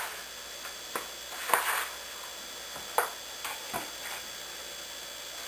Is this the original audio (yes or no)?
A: yes